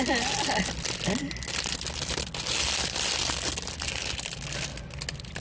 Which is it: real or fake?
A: real